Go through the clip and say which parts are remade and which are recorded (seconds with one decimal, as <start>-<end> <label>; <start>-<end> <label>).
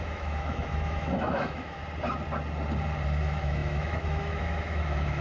0.0-1.8 remade; 1.8-3.2 recorded; 3.2-5.2 remade